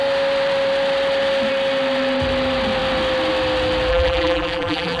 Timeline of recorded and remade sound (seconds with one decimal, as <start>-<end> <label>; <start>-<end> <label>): 0.0-3.9 recorded; 3.9-5.0 remade